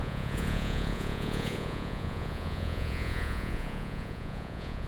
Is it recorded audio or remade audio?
remade